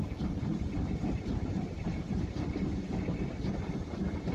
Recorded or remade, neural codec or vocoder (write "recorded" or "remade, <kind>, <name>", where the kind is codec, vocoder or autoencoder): remade, vocoder, BigVGAN v2